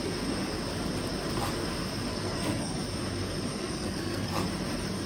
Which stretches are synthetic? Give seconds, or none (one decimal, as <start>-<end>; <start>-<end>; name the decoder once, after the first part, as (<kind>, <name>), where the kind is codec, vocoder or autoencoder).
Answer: 2.1-2.7 (codec, SNAC); 3.5-4.3